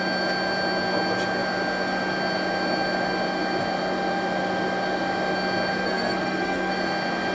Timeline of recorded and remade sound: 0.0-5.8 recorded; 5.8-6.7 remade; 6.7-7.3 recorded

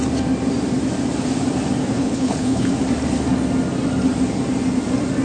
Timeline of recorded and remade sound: 0.0-1.8 recorded; 1.8-2.7 remade; 2.7-5.2 recorded

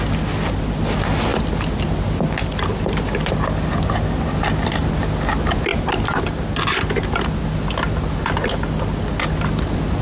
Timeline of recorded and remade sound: 0.0-10.0 recorded

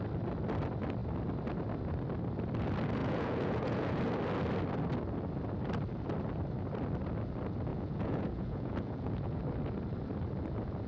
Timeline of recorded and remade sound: 0.0-3.0 recorded; 3.0-4.0 remade; 4.0-7.7 recorded; 7.7-9.4 remade; 9.4-10.9 recorded

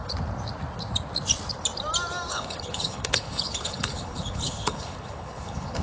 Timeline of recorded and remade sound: 0.0-2.3 recorded; 2.3-5.8 remade

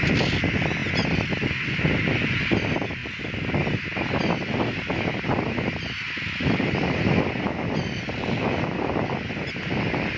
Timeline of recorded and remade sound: 0.0-10.2 recorded

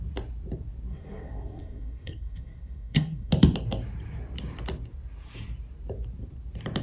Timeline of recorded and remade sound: 0.0-0.9 recorded; 0.9-3.3 remade; 3.3-6.8 recorded